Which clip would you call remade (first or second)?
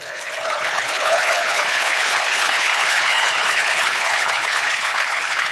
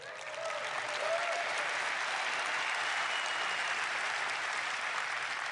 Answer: first